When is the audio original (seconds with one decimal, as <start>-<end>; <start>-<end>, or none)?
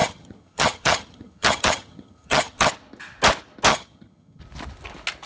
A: 2.7-3.7; 4.4-5.3